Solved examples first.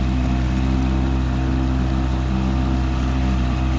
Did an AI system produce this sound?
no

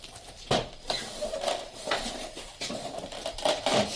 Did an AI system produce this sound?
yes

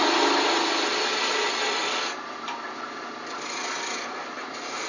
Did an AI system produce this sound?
no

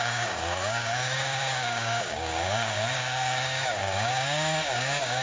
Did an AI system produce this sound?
yes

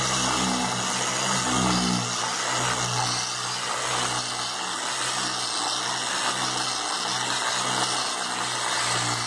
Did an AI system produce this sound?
no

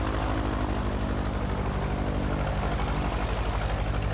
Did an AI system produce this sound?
no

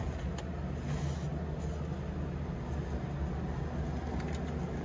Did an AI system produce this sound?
no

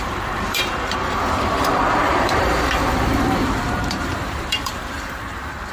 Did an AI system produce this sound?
yes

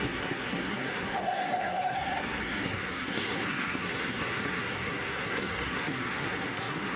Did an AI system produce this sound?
yes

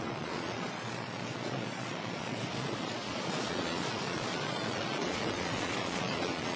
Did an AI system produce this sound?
yes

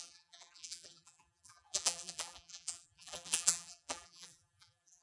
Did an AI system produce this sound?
yes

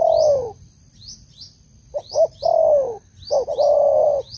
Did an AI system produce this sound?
no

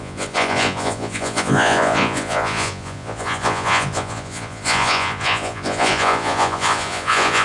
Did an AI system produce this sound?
yes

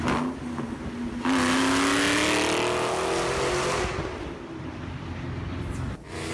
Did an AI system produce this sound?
no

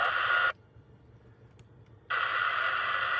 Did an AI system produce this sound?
no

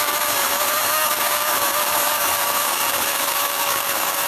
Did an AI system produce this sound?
yes